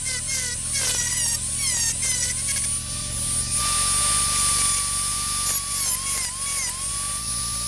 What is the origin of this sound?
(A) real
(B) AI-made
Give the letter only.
A